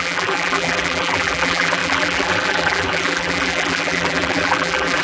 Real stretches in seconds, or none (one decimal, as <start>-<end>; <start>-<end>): none